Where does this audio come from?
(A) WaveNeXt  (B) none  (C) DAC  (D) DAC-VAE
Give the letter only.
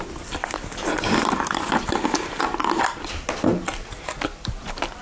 B